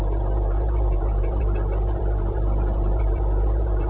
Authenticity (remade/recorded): remade